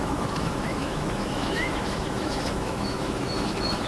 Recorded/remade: remade